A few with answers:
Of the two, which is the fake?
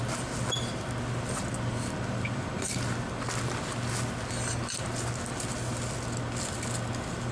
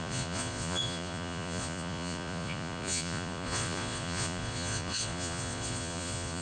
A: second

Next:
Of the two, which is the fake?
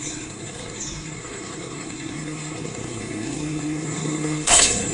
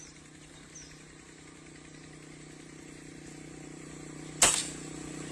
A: first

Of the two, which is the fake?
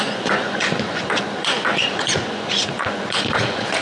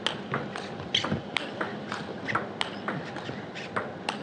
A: first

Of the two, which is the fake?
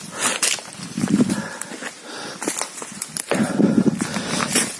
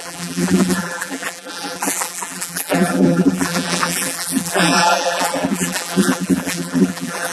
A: second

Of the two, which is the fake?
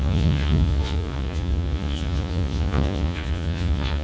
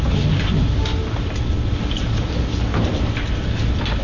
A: first